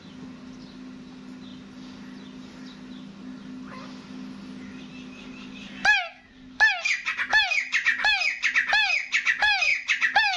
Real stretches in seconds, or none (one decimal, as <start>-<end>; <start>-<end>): 0.0-10.4